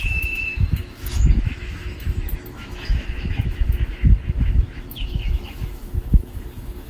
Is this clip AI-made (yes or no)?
yes